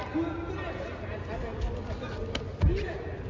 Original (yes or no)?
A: yes